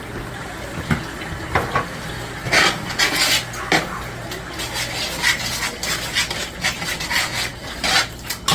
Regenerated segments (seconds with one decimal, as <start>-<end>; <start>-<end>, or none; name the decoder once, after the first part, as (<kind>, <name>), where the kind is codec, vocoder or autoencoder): none